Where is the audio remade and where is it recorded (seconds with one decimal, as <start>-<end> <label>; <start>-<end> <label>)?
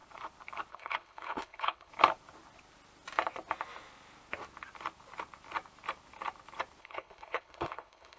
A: 0.0-0.7 recorded; 0.7-1.9 remade; 1.9-6.8 recorded; 6.8-8.2 remade